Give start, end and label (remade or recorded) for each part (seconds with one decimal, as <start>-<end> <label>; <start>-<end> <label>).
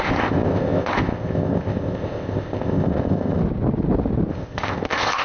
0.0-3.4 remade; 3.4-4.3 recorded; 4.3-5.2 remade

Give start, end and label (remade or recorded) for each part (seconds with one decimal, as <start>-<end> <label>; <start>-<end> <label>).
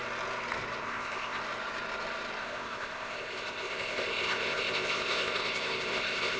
0.0-0.8 recorded; 0.8-1.4 remade; 1.4-2.4 recorded; 2.4-6.4 remade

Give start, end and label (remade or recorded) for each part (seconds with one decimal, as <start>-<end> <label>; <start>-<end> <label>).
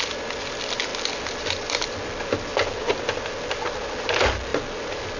0.0-5.2 recorded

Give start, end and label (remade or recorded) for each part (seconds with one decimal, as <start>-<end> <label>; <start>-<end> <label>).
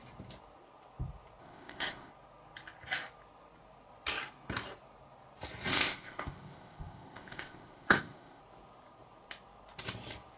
0.0-1.4 recorded; 1.4-2.1 remade; 2.1-5.7 recorded; 5.7-8.4 remade; 8.4-10.4 recorded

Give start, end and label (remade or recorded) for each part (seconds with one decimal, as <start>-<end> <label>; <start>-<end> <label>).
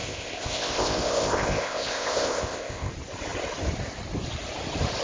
0.0-2.9 remade; 2.9-5.0 recorded